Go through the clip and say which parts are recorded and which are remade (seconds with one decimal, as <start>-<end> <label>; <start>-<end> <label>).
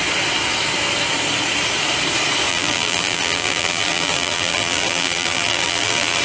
0.0-2.5 recorded; 2.5-6.2 remade